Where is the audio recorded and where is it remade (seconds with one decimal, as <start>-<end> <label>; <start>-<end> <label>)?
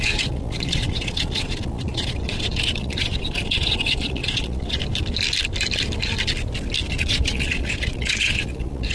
0.0-4.8 remade; 4.8-6.9 recorded; 6.9-8.9 remade